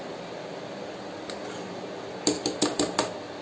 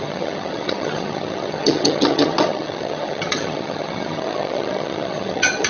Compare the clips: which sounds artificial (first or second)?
second